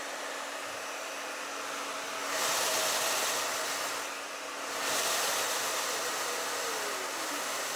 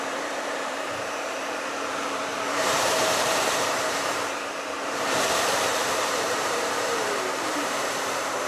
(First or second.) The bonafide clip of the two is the first